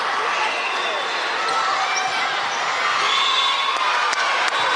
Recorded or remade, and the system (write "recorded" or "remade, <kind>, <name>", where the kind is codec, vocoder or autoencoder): recorded